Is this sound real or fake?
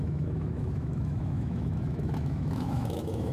fake